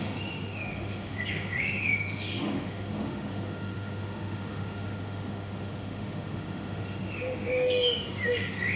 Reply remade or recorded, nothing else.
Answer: remade